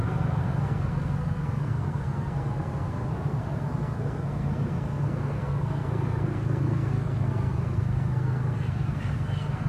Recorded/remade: remade